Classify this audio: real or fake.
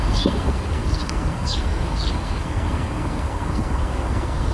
fake